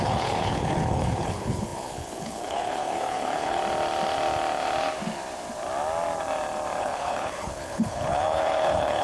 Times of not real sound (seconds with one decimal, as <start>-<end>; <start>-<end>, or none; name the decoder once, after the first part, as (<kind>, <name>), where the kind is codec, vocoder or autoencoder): 0.0-3.6 (codec, HILCodec); 6.8-9.0